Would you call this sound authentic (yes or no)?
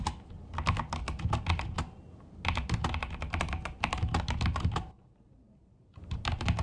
yes